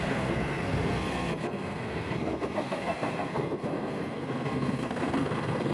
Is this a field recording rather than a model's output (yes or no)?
no